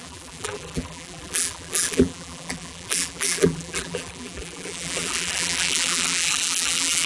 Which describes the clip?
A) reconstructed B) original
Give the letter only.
A